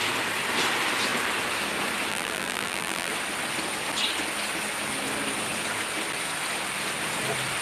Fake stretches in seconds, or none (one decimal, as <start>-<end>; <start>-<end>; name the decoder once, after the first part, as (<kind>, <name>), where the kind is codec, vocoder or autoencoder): 2.1-3.1 (vocoder, BigVGAN v2)